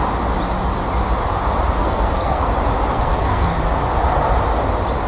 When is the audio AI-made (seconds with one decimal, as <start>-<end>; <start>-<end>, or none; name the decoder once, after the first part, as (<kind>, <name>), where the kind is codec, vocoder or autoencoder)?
1.8-2.5 (codec, SNAC); 2.9-3.6